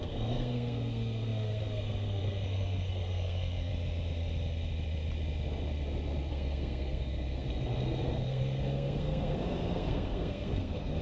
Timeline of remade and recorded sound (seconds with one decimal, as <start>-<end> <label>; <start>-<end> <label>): 0.0-3.7 remade; 3.7-6.3 recorded; 6.3-11.0 remade